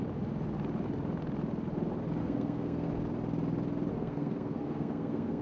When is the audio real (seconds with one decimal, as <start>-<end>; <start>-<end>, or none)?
0.0-2.2; 2.9-3.9